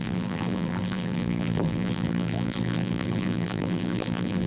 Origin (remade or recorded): remade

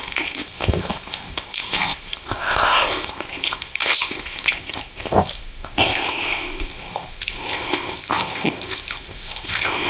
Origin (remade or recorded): remade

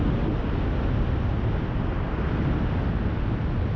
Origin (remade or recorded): recorded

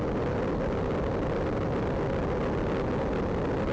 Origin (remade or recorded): recorded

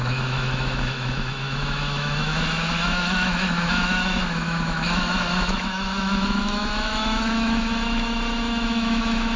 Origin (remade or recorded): remade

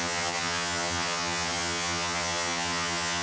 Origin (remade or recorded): remade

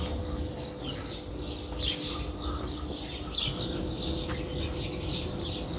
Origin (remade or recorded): recorded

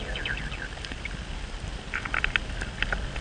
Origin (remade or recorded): recorded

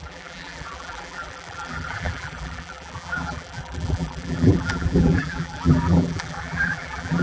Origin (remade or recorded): remade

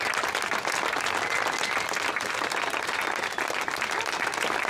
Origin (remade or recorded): recorded